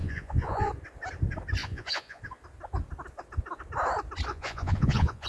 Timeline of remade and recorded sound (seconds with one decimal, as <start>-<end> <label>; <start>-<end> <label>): 0.0-0.7 remade; 0.7-1.6 recorded; 1.6-2.2 remade; 2.2-4.3 recorded; 4.3-5.3 remade